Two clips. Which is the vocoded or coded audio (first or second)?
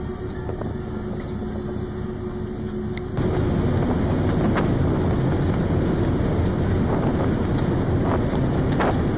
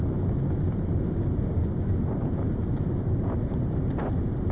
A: second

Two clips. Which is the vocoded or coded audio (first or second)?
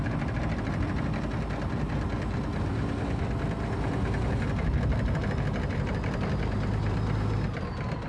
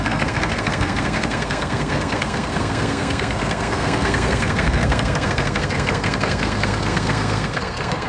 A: second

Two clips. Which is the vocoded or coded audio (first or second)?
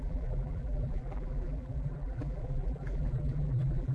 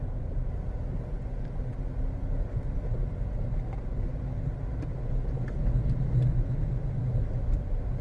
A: first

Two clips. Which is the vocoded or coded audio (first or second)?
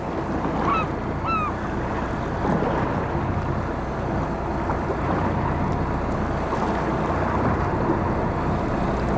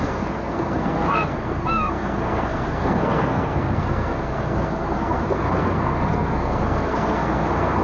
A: second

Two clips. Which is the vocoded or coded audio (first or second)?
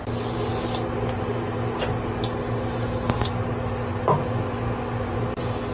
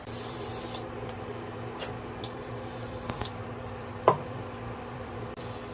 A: second